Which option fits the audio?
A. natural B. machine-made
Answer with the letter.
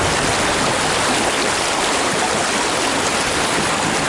A